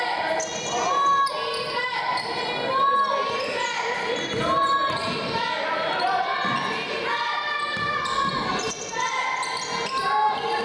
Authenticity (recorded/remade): recorded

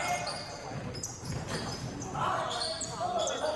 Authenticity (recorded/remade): remade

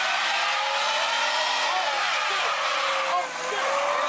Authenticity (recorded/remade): recorded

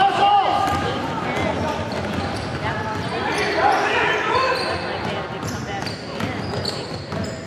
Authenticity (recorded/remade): recorded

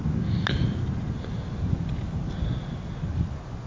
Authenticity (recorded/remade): remade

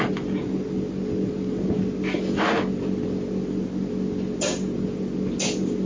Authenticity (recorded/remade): recorded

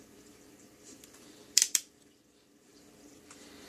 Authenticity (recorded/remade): remade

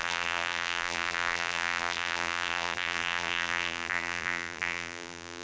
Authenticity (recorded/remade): remade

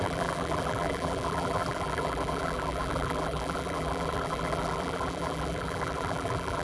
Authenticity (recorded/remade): remade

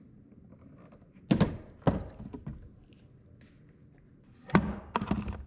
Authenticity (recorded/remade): recorded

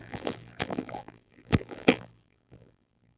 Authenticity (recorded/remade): remade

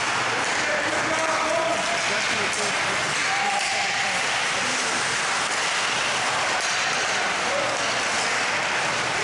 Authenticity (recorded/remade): recorded